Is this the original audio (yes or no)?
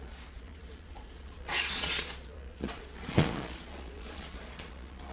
no